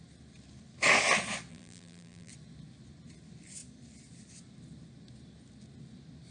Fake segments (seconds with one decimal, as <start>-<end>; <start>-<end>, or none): 1.5-2.3